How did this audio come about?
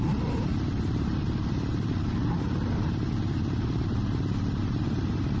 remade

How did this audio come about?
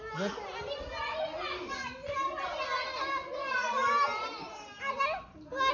recorded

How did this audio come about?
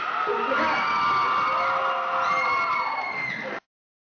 recorded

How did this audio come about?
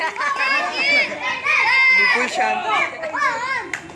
recorded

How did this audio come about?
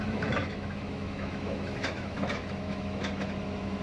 remade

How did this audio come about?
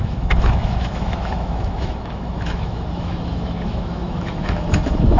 remade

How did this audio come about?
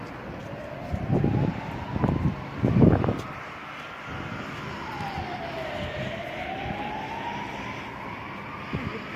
recorded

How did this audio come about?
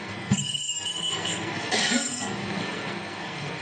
remade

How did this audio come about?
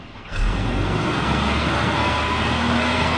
remade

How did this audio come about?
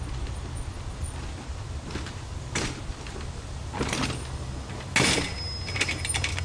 recorded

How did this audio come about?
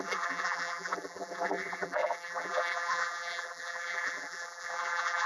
remade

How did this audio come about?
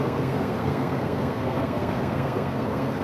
remade